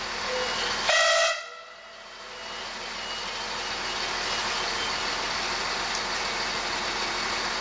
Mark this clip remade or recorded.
recorded